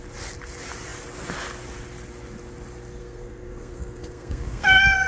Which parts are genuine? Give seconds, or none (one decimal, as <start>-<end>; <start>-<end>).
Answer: 0.0-3.0